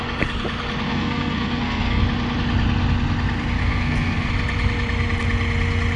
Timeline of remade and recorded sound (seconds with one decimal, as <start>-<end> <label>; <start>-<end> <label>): 0.0-0.9 recorded; 0.9-2.0 remade; 2.0-3.6 recorded; 3.6-4.3 remade; 4.3-6.0 recorded